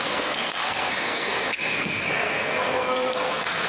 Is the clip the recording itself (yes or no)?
no